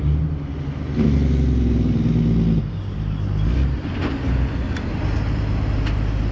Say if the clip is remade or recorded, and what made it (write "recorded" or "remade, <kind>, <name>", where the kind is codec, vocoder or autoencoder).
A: recorded